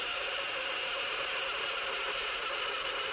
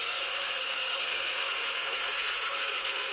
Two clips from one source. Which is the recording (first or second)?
first